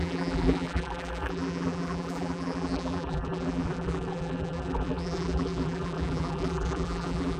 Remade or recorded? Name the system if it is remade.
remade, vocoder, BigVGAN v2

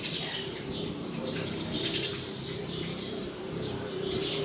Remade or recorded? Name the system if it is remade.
remade, vocoder, BigVGAN v2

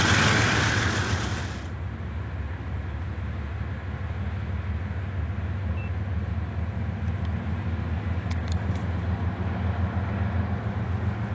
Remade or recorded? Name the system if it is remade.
recorded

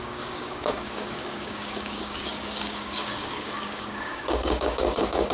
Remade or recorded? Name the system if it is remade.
remade, codec, DAC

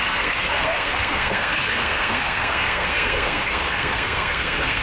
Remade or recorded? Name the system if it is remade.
remade, codec, SNAC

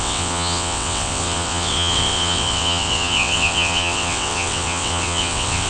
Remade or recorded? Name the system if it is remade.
remade, vocoder, WaveNeXt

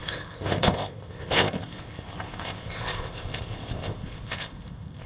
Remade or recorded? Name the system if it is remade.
remade, codec, ZipCodec